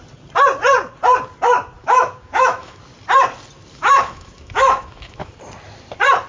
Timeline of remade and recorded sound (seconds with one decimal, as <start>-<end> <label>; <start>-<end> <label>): 0.0-1.8 recorded; 1.8-2.8 remade; 2.8-3.7 recorded; 3.7-5.3 remade; 5.3-6.3 recorded